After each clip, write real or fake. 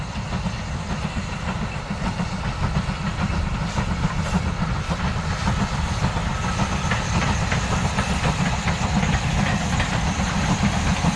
real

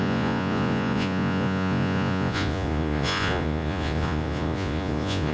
fake